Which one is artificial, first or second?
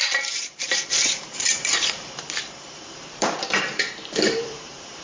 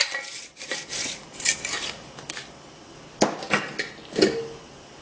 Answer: first